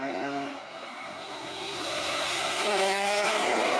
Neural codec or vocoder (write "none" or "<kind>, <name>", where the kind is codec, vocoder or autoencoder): codec, SNAC